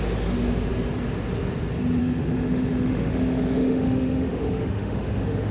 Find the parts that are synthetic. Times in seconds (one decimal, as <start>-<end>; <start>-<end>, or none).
2.0-5.5